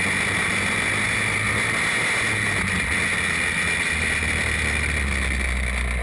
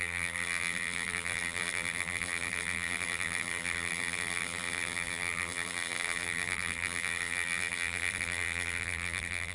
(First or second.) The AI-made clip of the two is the second